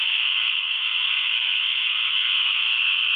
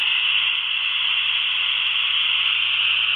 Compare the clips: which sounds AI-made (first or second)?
first